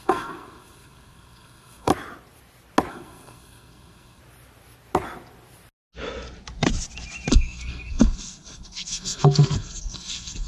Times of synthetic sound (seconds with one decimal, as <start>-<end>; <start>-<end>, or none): 0.0-1.9; 2.9-4.2; 7.3-10.5